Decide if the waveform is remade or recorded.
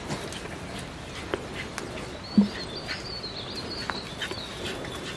recorded